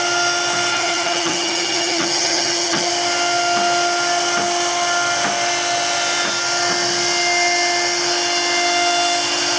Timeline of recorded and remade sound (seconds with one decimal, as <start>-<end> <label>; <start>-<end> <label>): 0.0-0.7 recorded; 0.7-2.9 remade; 2.9-9.6 recorded